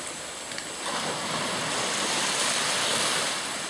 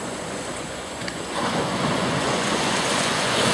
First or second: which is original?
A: first